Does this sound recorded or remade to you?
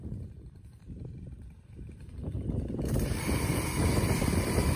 remade